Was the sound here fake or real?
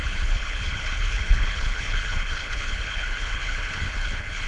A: fake